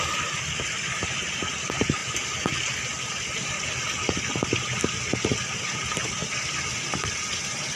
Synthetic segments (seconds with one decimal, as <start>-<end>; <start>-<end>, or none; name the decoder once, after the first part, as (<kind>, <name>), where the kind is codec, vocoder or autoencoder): none